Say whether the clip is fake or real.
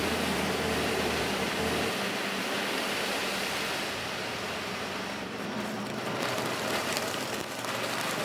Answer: fake